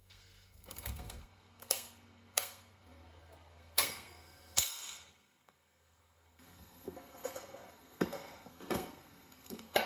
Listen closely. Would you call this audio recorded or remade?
remade